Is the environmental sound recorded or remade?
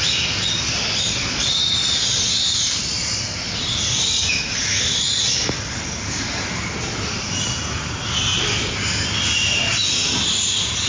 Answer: recorded